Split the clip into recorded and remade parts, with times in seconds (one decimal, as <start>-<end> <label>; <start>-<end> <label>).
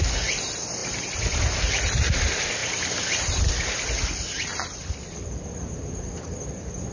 0.0-6.9 recorded